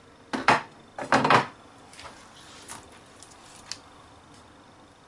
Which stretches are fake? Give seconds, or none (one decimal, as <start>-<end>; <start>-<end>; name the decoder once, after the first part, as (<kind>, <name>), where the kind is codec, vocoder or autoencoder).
1.9-2.5 (vocoder, BigVGAN v2)